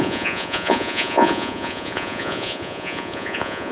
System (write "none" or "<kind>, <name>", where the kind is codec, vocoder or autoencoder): vocoder, Vocos